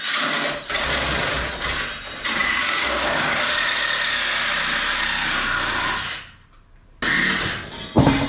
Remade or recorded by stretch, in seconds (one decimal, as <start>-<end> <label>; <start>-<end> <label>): 0.0-2.4 recorded; 2.4-3.5 remade; 3.5-8.3 recorded